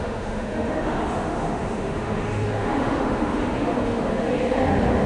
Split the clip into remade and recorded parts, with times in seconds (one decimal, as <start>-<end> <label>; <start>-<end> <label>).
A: 0.0-5.1 remade